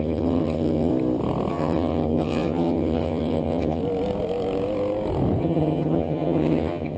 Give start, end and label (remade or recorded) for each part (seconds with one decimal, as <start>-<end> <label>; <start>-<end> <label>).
0.0-0.9 remade; 0.9-1.5 recorded; 1.5-3.8 remade; 3.8-5.4 recorded; 5.4-7.0 remade